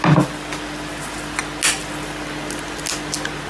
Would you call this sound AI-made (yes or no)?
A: no